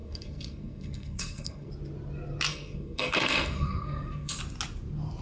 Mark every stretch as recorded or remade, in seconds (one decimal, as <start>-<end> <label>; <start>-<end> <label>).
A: 0.0-1.7 remade; 1.7-2.5 recorded; 2.5-4.4 remade; 4.4-5.2 recorded